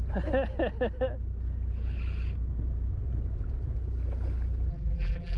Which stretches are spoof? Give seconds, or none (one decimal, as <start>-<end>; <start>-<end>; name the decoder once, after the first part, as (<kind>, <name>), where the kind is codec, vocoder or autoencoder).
4.7-5.4 (vocoder, BigVGAN v2)